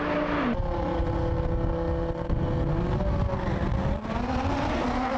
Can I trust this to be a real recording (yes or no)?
yes